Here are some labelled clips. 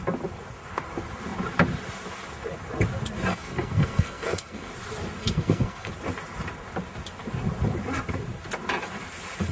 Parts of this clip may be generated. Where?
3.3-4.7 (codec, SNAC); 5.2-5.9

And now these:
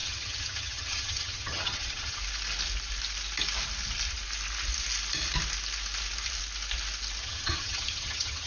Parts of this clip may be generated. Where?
0.0-2.2 (vocoder, HiFi-GAN); 7.2-8.5

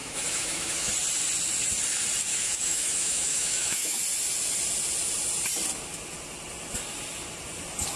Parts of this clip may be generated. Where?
0.0-0.9 (autoencoder, DAC-VAE); 2.3-4.0

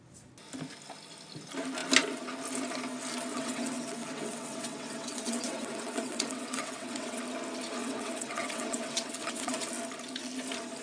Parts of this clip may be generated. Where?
3.3-7.2 (vocoder, WaveNeXt); 7.8-9.6

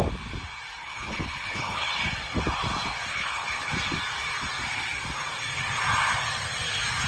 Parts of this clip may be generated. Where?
0.8-1.9 (codec, HILCodec); 3.1-3.7